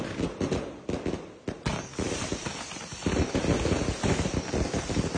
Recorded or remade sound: recorded